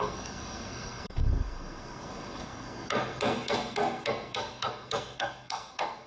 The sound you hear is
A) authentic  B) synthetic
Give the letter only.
B